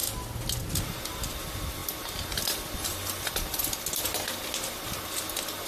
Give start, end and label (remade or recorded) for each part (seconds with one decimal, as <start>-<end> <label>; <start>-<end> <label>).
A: 0.0-5.7 recorded